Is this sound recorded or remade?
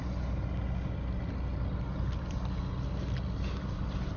recorded